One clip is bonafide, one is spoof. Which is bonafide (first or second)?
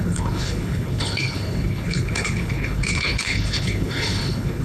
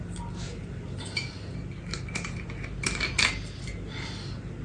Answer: second